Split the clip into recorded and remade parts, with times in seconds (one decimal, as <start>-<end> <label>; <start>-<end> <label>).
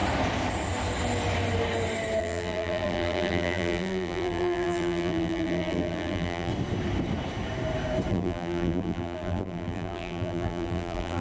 0.0-2.2 recorded; 2.2-6.5 remade; 6.5-8.1 recorded; 8.1-11.2 remade